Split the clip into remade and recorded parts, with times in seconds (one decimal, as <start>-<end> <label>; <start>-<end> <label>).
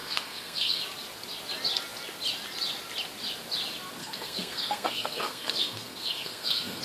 0.0-0.8 remade; 0.8-4.0 recorded; 4.0-6.8 remade